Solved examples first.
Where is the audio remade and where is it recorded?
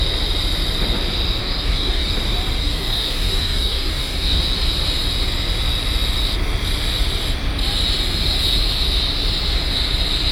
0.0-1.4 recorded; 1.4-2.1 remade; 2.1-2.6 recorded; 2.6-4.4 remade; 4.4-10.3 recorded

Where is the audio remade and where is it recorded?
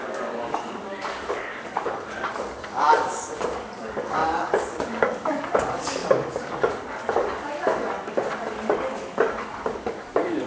0.0-10.5 remade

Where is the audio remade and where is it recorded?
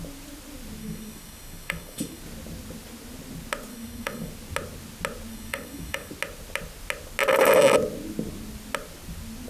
0.0-0.8 recorded; 0.8-2.2 remade; 2.2-3.7 recorded; 3.7-4.3 remade; 4.3-5.3 recorded; 5.3-6.1 remade; 6.1-9.5 recorded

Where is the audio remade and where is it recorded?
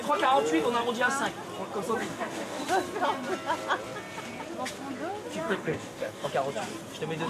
0.0-2.0 recorded; 2.0-2.6 remade; 2.6-5.4 recorded; 5.4-6.3 remade; 6.3-7.3 recorded